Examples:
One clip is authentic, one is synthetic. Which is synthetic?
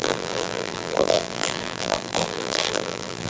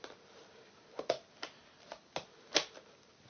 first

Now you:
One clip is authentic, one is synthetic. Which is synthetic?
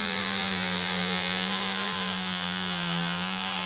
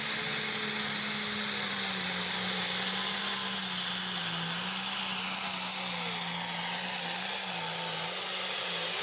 first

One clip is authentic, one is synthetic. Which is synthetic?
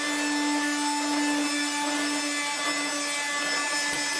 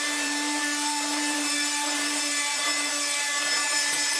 second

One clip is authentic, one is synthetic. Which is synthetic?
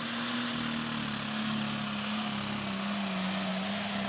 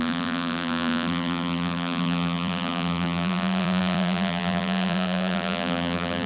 second